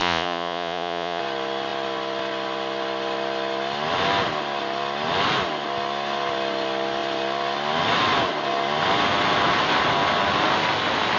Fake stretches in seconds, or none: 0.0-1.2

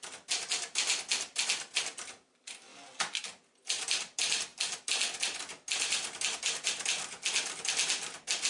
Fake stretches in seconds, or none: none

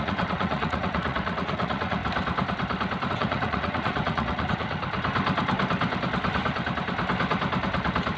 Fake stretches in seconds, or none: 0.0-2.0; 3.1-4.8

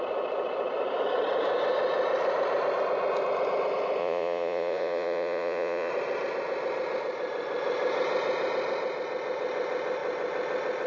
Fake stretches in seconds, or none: 4.0-5.9